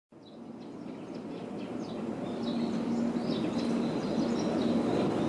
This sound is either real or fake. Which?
real